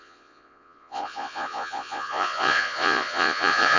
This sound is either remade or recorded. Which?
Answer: remade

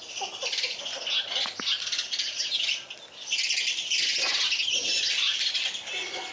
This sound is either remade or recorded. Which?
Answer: recorded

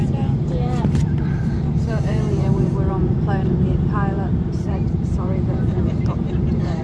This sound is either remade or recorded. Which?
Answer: remade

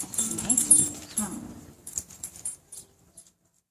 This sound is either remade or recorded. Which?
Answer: remade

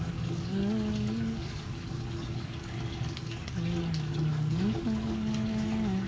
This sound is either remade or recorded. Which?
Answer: remade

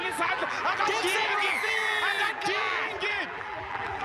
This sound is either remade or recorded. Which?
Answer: remade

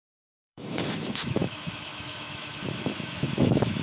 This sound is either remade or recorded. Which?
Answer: remade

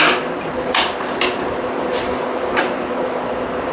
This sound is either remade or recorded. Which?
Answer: recorded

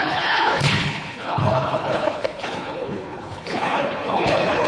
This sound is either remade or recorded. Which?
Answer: remade